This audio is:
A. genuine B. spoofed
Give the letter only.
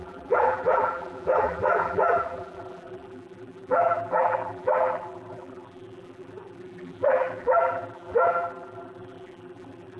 B